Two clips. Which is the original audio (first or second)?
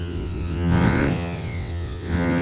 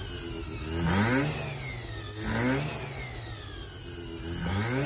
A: second